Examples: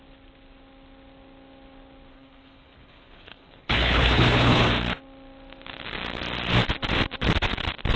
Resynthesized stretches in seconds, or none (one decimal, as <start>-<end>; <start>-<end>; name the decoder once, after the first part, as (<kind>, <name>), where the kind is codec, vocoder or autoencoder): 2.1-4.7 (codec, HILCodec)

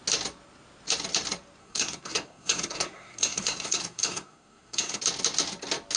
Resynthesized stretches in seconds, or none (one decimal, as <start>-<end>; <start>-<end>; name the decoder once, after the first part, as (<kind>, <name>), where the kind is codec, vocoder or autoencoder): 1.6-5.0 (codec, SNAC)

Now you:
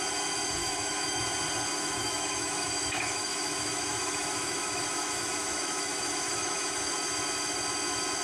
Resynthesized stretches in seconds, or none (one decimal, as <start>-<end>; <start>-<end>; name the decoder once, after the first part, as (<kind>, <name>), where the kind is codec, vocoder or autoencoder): 0.6-1.2 (autoencoder, DAC-VAE); 2.0-6.9

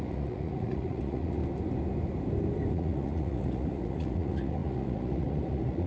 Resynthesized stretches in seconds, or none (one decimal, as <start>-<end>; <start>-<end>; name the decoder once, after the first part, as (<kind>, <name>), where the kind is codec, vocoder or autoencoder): 0.0-1.4 (vocoder, Vocos); 2.7-5.9

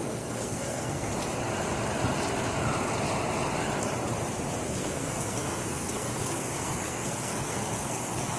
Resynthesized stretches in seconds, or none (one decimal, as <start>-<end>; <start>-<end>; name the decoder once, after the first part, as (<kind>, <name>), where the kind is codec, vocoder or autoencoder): 0.0-1.1 (codec, SNAC); 4.6-8.4